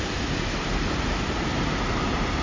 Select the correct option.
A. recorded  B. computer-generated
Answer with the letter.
B